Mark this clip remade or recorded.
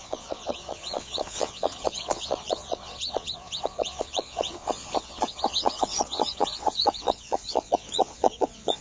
remade